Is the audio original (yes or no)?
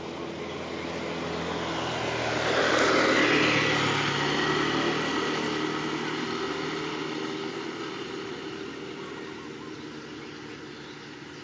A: yes